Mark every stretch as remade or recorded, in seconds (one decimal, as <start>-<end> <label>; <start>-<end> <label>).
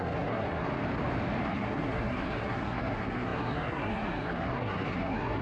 0.0-0.7 remade; 0.7-1.4 recorded; 1.4-5.4 remade